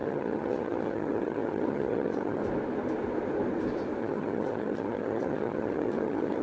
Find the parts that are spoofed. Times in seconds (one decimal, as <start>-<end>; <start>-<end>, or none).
0.0-2.4; 4.0-6.4